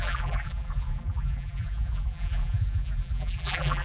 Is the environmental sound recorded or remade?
remade